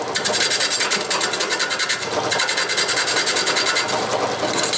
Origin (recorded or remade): recorded